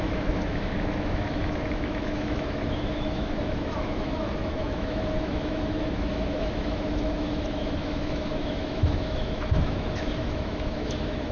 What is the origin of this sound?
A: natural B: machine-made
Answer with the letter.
B